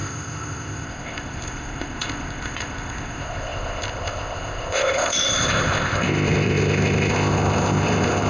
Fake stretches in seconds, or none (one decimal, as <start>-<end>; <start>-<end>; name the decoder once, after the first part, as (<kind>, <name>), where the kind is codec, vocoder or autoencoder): 0.0-8.3 (codec, ZipCodec)